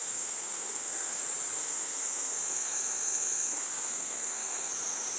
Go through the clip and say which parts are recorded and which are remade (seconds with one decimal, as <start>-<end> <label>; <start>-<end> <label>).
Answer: 0.0-1.2 remade; 1.2-1.6 recorded; 1.6-4.7 remade; 4.7-5.2 recorded